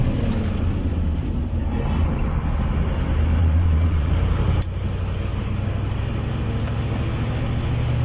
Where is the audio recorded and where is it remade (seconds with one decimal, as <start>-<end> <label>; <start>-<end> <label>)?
0.0-3.4 recorded; 3.4-4.1 remade; 4.1-8.0 recorded